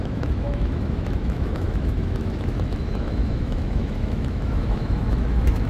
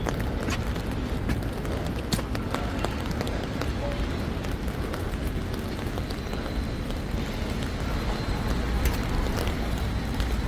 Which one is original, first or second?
second